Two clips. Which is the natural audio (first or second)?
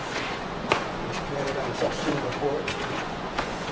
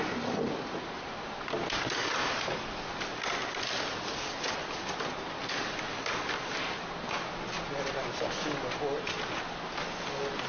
second